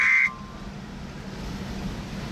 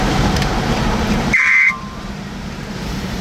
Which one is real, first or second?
first